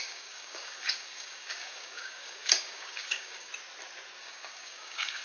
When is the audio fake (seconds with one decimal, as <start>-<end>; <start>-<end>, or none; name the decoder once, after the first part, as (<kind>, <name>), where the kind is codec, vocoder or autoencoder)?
0.0-3.5 (codec, DAC); 4.2-5.2